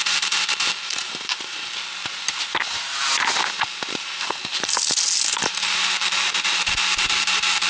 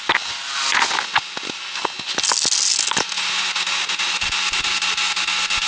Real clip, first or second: second